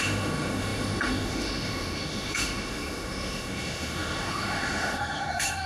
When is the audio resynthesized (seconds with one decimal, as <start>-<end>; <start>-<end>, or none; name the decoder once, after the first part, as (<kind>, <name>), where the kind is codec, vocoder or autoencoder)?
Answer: 0.0-5.7 (autoencoder, DAC-VAE)